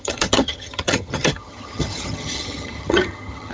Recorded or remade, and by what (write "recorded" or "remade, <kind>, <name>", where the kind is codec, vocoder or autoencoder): remade, vocoder, HiFi-GAN